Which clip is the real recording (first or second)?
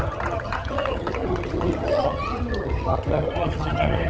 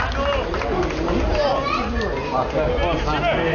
second